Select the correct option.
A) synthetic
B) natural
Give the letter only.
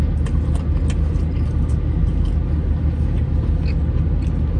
B